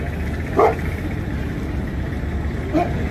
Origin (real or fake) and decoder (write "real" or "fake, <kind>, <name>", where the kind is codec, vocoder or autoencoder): real